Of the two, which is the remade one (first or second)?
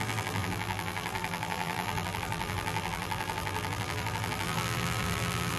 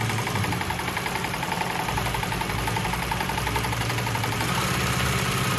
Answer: first